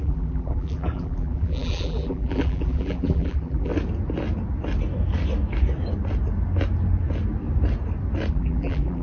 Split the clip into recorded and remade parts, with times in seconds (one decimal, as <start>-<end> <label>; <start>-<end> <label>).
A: 0.0-3.7 remade; 3.7-8.3 recorded; 8.3-9.0 remade